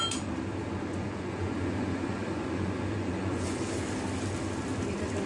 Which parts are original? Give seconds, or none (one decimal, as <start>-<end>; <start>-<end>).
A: 0.0-0.9; 3.6-5.3

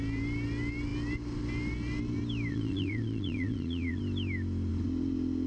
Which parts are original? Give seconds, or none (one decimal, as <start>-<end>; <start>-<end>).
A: 0.0-2.5; 4.0-5.5

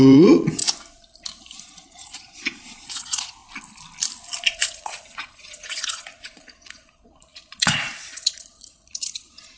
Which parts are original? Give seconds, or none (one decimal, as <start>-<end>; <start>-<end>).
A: 0.6-1.6; 3.4-4.5

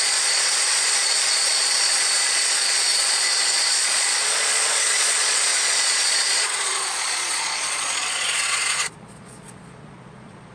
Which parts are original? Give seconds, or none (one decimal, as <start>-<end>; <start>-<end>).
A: none

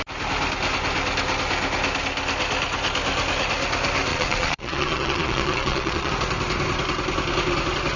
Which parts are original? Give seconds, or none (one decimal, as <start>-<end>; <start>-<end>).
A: 0.0-4.1; 6.1-8.0

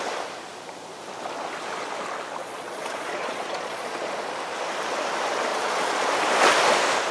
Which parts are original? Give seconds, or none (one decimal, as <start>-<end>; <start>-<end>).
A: 0.0-2.4; 4.3-5.5; 6.1-7.1

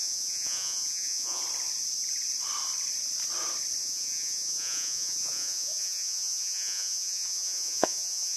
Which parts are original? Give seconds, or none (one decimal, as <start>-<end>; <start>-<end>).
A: 1.4-3.8

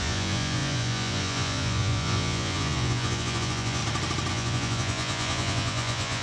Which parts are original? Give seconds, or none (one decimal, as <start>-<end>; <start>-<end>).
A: 3.8-4.3